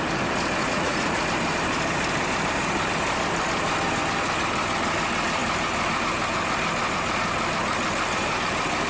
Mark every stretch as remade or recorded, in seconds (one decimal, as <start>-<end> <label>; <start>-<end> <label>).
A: 0.0-0.6 recorded; 0.6-1.2 remade; 1.2-8.9 recorded